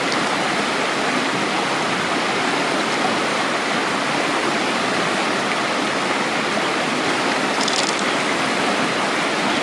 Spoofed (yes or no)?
no